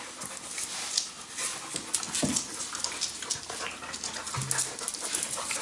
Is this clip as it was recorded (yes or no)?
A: yes